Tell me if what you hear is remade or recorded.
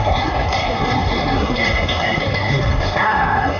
remade